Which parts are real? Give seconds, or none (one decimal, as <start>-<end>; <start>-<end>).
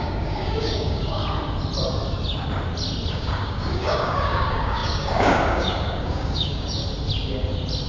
1.2-3.1; 6.8-7.9